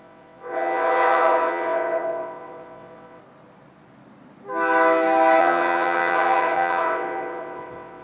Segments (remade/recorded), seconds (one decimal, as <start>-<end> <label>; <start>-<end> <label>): 0.0-3.2 remade; 3.2-5.4 recorded; 5.4-8.0 remade